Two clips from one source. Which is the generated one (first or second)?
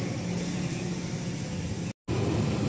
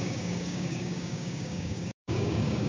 second